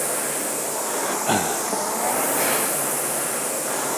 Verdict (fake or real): real